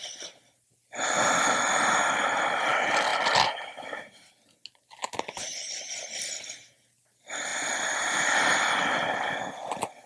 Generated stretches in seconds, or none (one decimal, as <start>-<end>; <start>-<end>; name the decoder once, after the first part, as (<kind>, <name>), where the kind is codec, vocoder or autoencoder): none